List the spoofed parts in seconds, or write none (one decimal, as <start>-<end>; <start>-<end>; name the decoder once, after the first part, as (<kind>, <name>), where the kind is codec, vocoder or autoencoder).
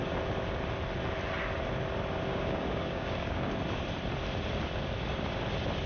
2.3-3.5 (codec, DAC)